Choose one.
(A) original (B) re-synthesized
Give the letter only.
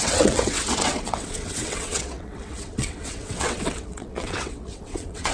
B